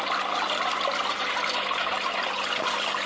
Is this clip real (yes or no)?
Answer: yes